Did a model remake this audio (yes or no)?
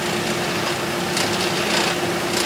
no